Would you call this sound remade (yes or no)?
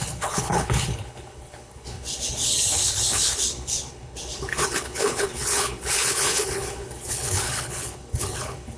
yes